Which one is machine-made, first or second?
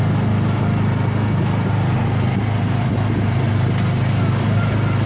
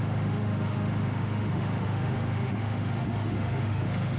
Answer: second